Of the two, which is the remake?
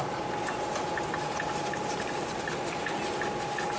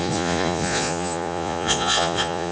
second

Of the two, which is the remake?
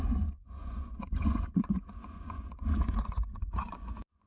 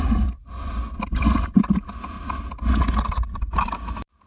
first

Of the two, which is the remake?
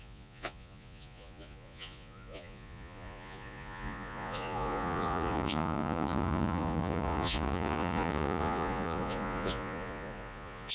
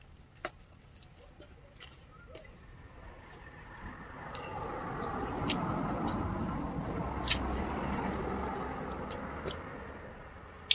first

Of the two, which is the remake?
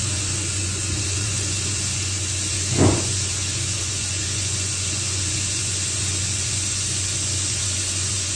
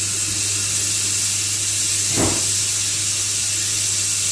first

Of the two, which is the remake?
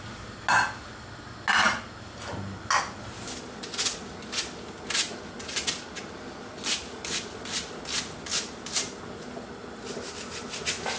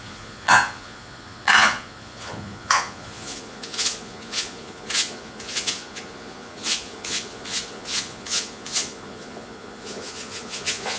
second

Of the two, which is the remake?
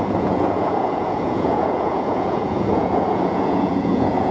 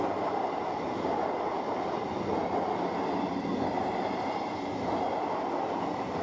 first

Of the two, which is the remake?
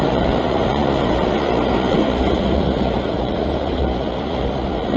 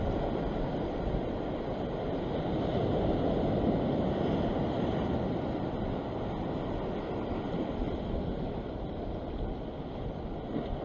first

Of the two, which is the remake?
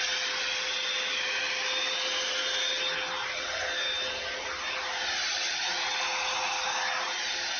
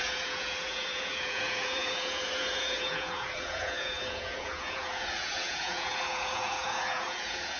second